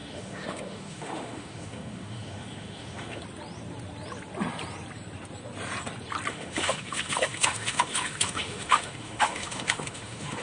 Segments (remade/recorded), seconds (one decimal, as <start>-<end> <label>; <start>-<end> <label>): 0.0-3.2 remade; 3.2-6.3 recorded; 6.3-10.4 remade